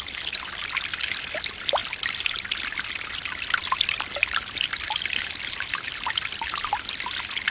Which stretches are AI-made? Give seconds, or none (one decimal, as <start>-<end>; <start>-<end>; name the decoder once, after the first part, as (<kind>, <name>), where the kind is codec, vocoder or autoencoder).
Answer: none